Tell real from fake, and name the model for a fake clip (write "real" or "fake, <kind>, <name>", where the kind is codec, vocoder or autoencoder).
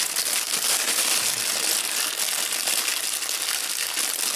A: real